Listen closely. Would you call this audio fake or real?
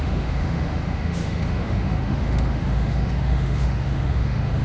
fake